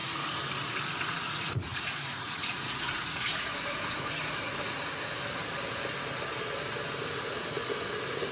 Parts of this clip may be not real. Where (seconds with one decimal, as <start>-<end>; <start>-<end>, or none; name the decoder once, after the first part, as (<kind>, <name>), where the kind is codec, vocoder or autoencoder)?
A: 1.0-5.2 (vocoder, Vocos); 7.1-8.3